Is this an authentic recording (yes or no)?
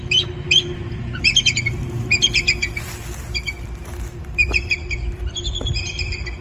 yes